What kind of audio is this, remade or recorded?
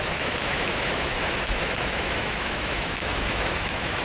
remade